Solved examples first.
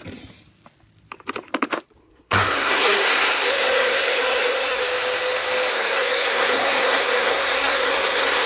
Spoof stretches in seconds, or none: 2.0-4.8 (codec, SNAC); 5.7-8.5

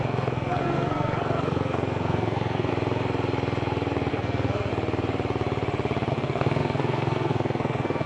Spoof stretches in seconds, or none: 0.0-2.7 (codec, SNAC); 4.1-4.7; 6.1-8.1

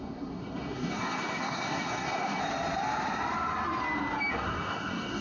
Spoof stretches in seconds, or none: 0.0-2.4 (codec, SNAC); 4.3-5.2

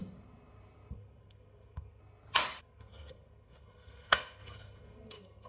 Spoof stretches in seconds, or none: 0.9-2.0 (codec, SNAC); 2.6-5.5

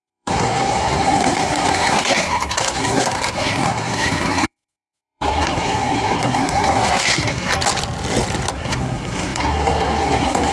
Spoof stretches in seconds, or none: 0.0-7.5 (codec, SNAC); 8.5-10.5

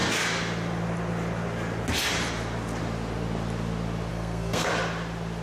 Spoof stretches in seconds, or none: 4.1-4.7 (codec, SNAC)

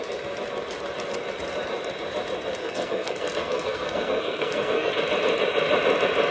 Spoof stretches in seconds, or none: 2.6-4.9 (codec, SNAC)